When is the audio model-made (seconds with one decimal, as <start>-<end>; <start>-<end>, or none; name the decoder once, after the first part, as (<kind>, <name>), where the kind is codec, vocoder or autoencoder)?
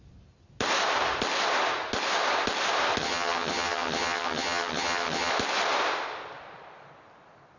3.0-5.3 (vocoder, HiFi-GAN)